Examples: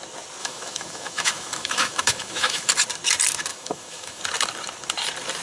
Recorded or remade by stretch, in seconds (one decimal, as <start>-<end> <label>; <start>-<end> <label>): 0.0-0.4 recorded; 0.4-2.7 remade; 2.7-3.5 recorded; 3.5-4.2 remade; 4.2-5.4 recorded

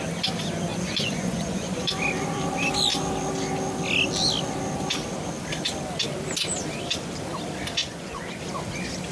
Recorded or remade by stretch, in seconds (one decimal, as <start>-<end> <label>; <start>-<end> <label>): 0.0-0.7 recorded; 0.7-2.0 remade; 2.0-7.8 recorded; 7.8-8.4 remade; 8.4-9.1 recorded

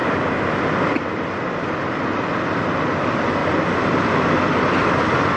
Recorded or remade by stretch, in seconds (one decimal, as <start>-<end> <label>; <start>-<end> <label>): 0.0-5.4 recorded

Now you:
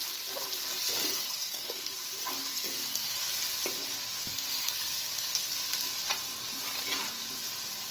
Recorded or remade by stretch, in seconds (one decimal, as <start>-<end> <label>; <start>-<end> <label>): 0.0-1.0 recorded; 1.0-1.9 remade; 1.9-2.5 recorded; 2.5-3.3 remade; 3.3-4.2 recorded; 4.2-5.5 remade; 5.5-7.9 recorded

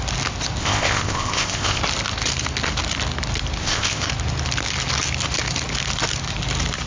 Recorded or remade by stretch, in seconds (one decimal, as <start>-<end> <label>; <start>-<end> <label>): 0.0-0.6 recorded; 0.6-1.8 remade; 1.8-3.6 recorded; 3.6-4.1 remade; 4.1-6.9 recorded

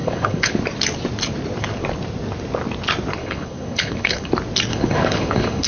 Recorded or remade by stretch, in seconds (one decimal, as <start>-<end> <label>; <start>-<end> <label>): 0.0-0.6 remade; 0.6-3.2 recorded; 3.2-4.3 remade; 4.3-4.7 recorded; 4.7-5.7 remade

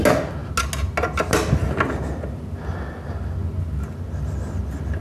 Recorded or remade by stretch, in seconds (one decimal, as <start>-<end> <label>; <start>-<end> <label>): 0.0-5.0 recorded